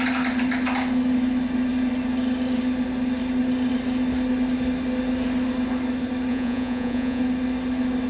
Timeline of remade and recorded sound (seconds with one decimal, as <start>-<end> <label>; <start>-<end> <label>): 0.0-6.3 recorded; 6.3-7.2 remade; 7.2-8.1 recorded